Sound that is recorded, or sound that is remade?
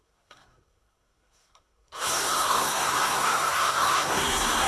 remade